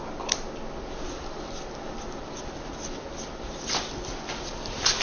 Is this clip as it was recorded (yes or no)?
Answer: yes